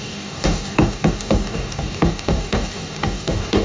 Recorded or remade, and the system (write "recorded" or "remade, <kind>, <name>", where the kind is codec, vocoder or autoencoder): remade, codec, DAC